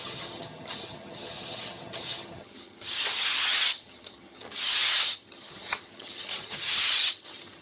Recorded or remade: remade